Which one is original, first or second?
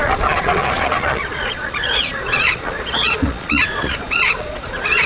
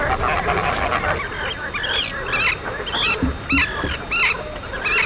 second